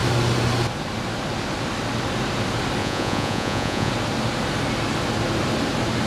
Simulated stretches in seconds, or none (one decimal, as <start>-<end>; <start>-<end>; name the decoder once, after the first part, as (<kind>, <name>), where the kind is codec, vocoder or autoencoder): 2.8-3.9 (vocoder, Vocos)